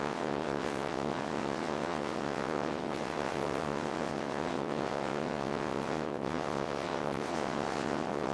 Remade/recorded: remade